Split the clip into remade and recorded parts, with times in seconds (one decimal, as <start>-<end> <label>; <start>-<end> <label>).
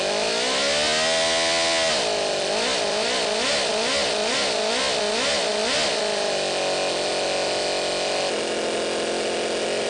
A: 0.0-9.9 recorded